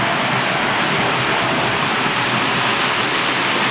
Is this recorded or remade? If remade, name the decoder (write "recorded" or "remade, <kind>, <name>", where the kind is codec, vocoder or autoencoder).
recorded